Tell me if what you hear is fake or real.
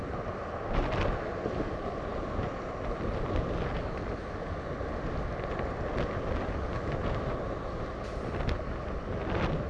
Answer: real